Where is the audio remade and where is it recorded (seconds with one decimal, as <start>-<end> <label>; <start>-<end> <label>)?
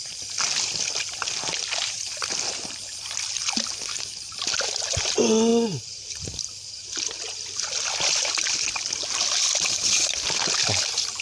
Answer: 0.0-11.2 recorded